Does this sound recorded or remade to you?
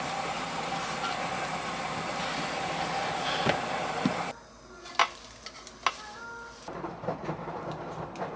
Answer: recorded